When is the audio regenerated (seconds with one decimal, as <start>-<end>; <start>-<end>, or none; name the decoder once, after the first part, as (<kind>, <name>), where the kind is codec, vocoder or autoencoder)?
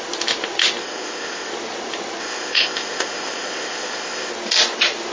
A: 0.8-1.5 (codec, ZipCodec); 2.2-4.3